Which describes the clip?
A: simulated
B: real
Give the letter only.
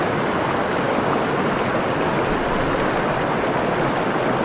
B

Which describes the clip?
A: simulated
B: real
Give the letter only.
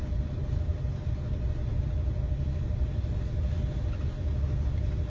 B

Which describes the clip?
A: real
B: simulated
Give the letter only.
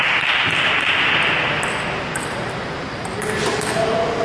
A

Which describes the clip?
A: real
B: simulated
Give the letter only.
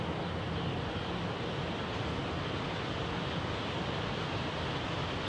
A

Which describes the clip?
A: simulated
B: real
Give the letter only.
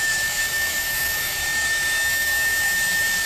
A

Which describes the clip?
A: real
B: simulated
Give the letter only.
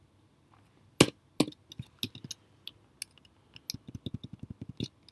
A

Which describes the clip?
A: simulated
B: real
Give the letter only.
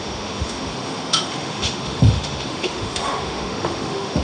A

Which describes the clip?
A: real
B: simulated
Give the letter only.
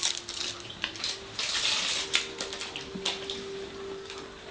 A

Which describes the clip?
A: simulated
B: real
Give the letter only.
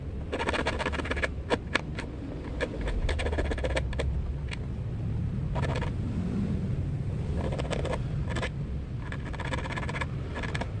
B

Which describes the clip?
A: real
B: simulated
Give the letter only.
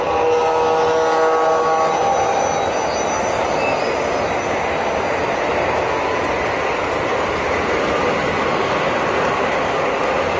A